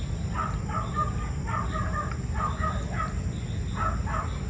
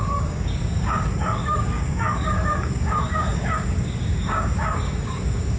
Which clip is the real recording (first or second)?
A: first